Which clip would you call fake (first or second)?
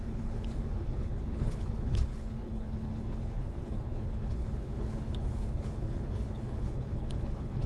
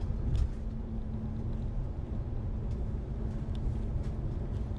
first